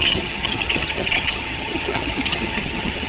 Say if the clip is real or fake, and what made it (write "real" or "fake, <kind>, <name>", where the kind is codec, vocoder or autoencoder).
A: fake, vocoder, HiFi-GAN